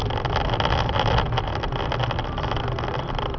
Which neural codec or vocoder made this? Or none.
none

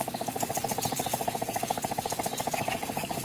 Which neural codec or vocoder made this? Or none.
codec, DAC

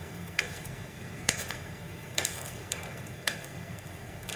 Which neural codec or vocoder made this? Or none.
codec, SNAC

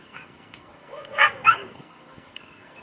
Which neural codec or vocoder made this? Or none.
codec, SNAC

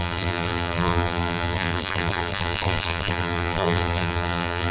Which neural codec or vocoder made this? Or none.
vocoder, BigVGAN v2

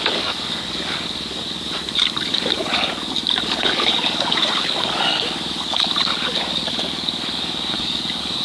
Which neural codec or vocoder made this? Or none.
codec, DAC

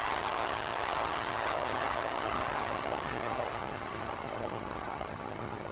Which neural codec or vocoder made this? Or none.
vocoder, HiFi-GAN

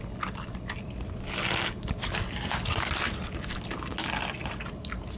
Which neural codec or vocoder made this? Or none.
none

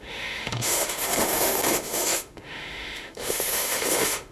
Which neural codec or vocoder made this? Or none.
autoencoder, DAC-VAE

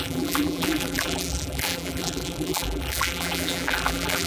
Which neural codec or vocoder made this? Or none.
vocoder, BigVGAN v2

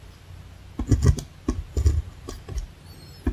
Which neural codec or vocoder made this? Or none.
none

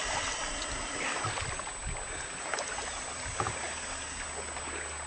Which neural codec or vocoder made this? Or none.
none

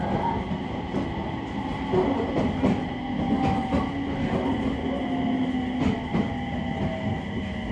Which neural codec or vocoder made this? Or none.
none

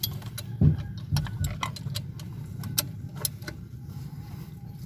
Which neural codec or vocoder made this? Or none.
none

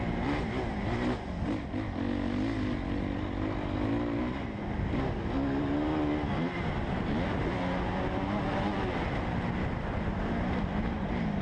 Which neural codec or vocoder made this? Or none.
none